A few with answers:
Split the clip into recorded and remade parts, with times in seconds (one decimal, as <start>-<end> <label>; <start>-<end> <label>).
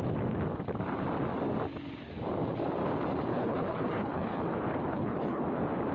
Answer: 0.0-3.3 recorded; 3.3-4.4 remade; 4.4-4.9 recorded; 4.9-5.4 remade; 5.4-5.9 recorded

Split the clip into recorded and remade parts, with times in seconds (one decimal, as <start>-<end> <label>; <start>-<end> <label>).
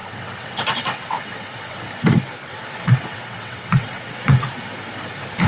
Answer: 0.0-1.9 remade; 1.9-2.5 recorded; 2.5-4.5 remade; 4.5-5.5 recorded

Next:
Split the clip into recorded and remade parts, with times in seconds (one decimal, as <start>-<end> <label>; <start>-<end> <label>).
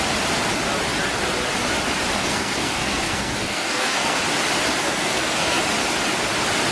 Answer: 0.0-2.2 recorded; 2.2-4.2 remade; 4.2-4.8 recorded; 4.8-5.6 remade; 5.6-6.7 recorded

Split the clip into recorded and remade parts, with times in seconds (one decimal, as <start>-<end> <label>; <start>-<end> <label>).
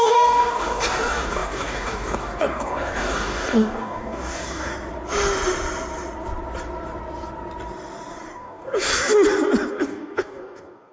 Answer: 0.0-4.7 remade; 4.7-8.3 recorded; 8.3-8.9 remade; 8.9-9.7 recorded; 9.7-10.9 remade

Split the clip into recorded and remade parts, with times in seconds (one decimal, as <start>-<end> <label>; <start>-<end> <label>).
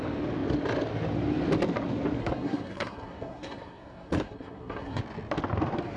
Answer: 0.0-2.2 recorded; 2.2-5.0 remade; 5.0-6.0 recorded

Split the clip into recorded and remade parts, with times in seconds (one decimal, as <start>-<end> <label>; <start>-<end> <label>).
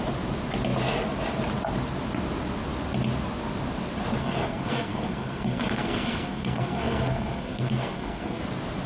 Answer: 0.0-4.2 recorded; 4.2-8.4 remade; 8.4-8.9 recorded